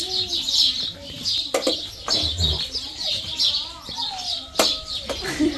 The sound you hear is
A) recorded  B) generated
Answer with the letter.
A